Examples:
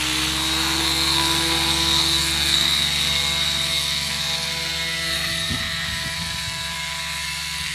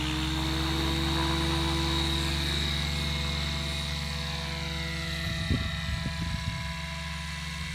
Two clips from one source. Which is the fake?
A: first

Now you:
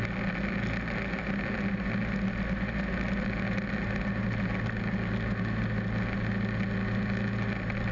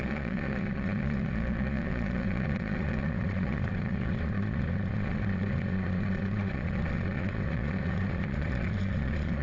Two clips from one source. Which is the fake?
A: second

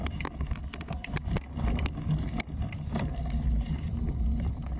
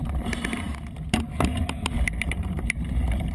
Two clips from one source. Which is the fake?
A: second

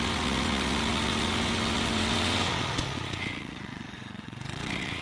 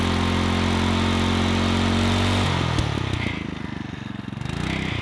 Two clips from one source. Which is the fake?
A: first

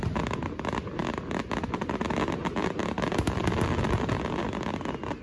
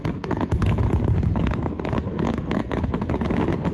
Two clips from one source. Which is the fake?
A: second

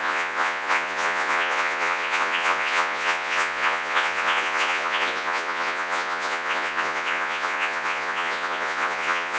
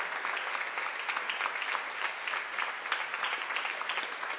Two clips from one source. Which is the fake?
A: first